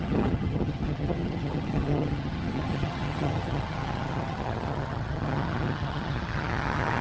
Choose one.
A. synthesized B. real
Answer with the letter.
A